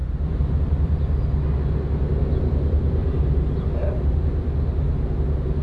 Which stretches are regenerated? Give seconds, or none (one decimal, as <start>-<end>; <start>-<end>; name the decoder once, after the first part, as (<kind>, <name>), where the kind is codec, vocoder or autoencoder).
0.0-0.6 (vocoder, BigVGAN v2); 3.0-4.1